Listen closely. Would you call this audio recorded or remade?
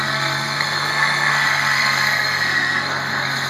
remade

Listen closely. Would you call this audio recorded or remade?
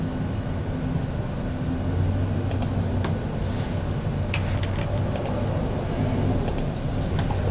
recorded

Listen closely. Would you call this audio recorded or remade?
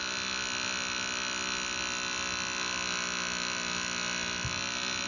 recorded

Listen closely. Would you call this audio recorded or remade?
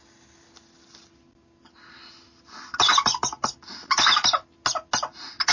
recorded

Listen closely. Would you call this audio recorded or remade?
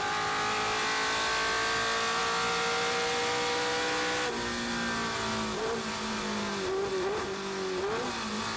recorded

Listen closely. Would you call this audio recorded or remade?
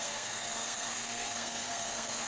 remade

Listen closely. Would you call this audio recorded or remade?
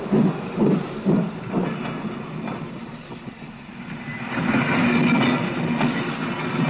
recorded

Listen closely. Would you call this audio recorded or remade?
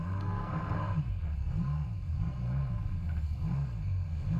remade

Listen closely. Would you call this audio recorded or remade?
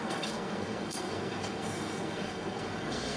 remade